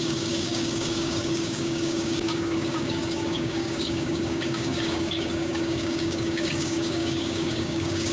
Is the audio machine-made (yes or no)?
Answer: yes